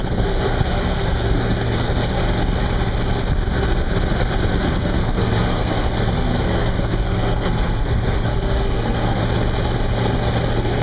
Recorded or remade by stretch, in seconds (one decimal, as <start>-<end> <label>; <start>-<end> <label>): 0.0-2.2 remade; 2.2-4.7 recorded; 4.7-9.2 remade; 9.2-10.4 recorded; 10.4-10.8 remade

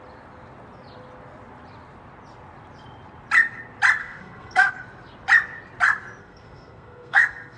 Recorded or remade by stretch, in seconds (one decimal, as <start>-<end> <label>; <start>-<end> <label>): 0.0-4.0 recorded; 4.0-4.7 remade; 4.7-6.2 recorded; 6.2-7.6 remade

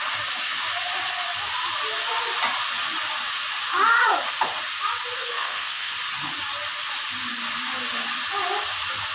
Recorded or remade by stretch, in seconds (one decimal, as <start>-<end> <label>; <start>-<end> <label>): 0.0-5.2 recorded; 5.2-5.9 remade; 5.9-9.1 recorded

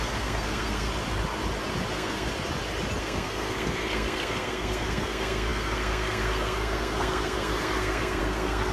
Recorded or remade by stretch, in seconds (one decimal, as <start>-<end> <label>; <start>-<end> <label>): 0.0-0.9 remade; 0.9-1.9 recorded; 1.9-2.3 remade; 2.3-3.0 recorded; 3.0-8.7 remade

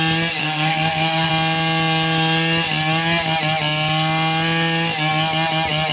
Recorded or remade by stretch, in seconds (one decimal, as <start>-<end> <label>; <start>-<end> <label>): 0.0-0.4 recorded; 0.4-1.3 remade; 1.3-5.9 recorded

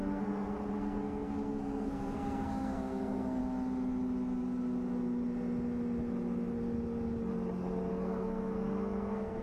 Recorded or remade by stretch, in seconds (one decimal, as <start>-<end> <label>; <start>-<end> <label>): 0.0-3.4 remade; 3.4-7.9 recorded; 7.9-9.4 remade

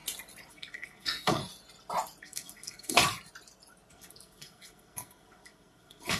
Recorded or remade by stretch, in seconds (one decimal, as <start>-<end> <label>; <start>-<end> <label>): 0.0-0.5 recorded; 0.5-1.4 remade; 1.4-2.2 recorded; 2.2-3.0 remade; 3.0-3.9 recorded; 3.9-6.2 remade

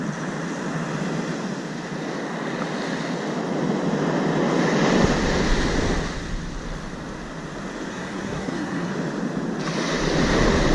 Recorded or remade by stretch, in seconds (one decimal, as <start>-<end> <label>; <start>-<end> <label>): 0.0-7.9 recorded; 7.9-8.9 remade; 8.9-10.7 recorded